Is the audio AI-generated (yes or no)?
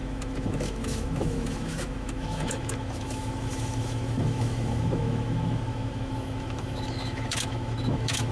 yes